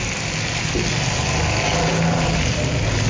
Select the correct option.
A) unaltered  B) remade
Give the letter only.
A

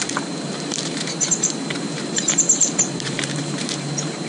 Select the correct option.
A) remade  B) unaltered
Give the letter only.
A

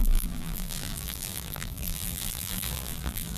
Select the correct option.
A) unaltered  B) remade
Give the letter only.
B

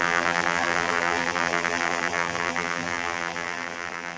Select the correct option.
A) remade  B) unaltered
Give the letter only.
A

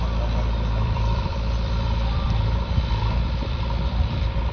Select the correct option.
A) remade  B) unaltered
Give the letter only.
A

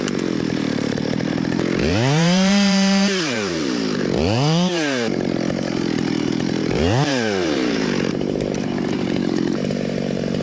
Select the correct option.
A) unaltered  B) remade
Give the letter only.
B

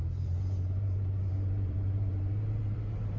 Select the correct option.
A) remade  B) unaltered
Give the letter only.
A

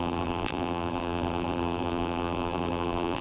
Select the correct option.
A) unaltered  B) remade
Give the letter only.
B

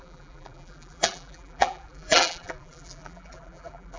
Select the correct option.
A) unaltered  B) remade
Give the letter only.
B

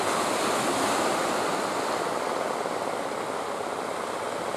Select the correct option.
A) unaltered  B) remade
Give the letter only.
A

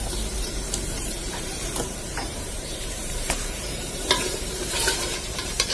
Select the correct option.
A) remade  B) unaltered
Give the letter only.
A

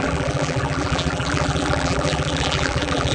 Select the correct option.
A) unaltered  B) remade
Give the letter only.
B